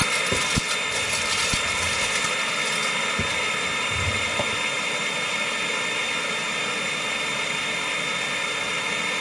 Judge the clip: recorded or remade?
recorded